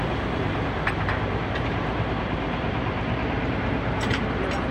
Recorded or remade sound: remade